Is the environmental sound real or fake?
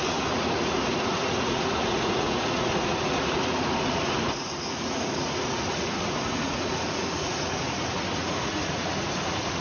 fake